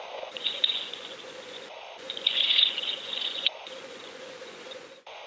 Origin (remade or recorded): remade